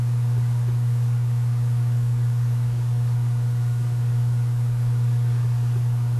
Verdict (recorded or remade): remade